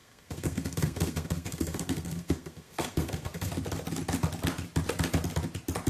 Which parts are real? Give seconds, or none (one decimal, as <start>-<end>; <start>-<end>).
3.5-5.9